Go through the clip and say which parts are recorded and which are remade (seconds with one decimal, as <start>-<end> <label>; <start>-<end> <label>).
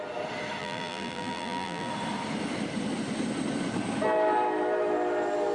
0.0-0.6 recorded; 0.6-1.9 remade; 1.9-5.5 recorded